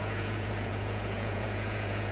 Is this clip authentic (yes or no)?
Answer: no